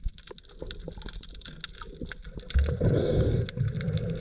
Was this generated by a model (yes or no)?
no